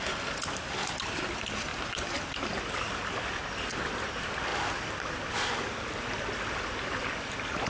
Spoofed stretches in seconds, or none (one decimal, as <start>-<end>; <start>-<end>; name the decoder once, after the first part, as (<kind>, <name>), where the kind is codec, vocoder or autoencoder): none